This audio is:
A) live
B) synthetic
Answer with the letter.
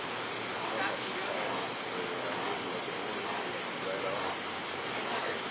A